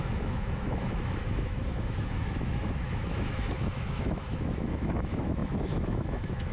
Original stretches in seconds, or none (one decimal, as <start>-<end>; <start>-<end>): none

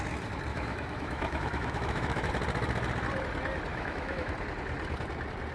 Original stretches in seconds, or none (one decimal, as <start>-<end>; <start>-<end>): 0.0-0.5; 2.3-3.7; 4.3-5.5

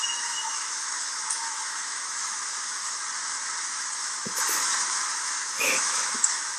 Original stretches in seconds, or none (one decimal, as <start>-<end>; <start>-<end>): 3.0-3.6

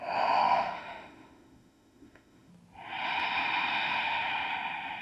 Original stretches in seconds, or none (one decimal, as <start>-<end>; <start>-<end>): 0.0-0.4; 2.5-3.7; 4.5-5.0

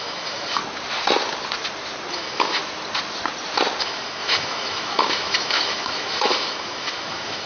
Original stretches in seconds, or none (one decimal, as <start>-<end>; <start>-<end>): 0.6-2.1; 2.6-3.8

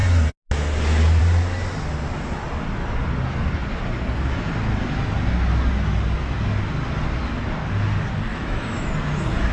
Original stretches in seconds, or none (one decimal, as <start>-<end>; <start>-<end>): 0.0-8.3; 8.9-9.5

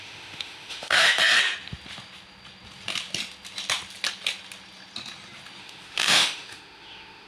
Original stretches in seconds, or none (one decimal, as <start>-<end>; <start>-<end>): 1.2-5.6